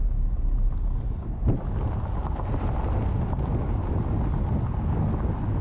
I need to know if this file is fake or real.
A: real